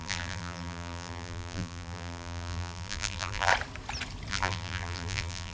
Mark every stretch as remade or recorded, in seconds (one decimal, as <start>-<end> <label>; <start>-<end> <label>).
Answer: 0.0-3.5 remade; 3.5-4.3 recorded; 4.3-5.5 remade